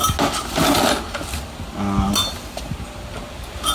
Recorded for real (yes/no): yes